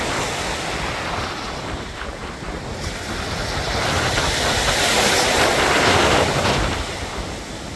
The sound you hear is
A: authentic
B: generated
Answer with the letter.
A